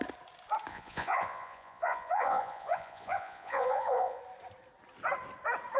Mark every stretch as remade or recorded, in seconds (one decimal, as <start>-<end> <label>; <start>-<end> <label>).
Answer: 0.0-0.7 recorded; 0.7-4.2 remade; 4.2-5.8 recorded